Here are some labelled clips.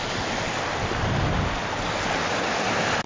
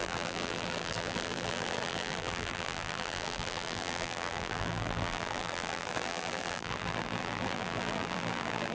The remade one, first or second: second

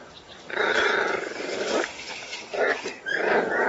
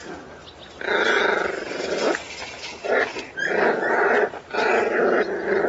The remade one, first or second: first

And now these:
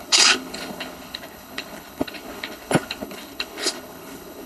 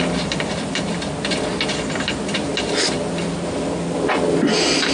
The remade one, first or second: first